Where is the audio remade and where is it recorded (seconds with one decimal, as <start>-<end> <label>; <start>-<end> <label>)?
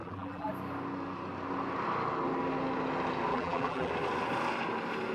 0.0-0.5 remade; 0.5-3.3 recorded; 3.3-3.9 remade; 3.9-5.1 recorded